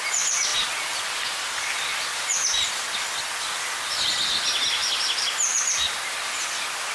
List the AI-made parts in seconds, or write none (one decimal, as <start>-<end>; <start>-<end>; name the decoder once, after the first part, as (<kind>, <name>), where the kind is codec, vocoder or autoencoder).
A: none